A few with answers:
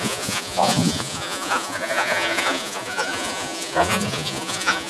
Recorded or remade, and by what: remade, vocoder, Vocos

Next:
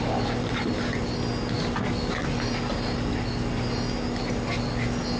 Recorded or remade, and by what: recorded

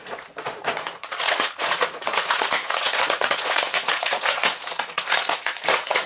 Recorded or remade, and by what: remade, vocoder, Vocos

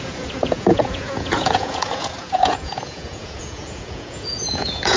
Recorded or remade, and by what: remade, vocoder, Vocos